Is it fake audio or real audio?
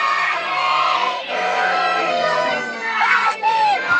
fake